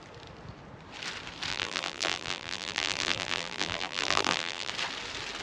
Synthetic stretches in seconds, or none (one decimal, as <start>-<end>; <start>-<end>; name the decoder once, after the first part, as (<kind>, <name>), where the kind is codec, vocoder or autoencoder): 1.5-4.7 (vocoder, BigVGAN v2)

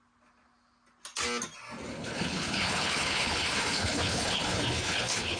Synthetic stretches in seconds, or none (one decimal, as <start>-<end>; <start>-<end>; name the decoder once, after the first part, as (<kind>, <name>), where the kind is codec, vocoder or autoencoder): 1.9-5.4 (codec, HILCodec)

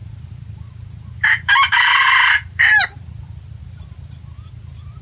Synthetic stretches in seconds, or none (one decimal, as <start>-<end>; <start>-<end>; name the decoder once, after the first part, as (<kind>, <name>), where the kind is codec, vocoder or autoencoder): 0.0-3.0 (vocoder, BigVGAN v2)